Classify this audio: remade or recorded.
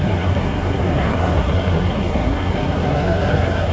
remade